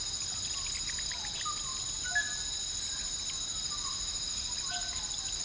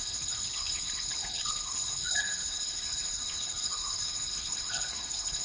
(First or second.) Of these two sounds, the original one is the first